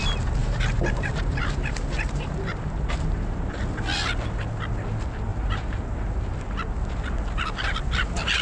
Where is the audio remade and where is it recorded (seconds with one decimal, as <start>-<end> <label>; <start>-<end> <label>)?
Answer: 0.0-0.4 recorded; 0.4-3.6 remade; 3.6-5.3 recorded; 5.3-5.8 remade; 5.8-8.4 recorded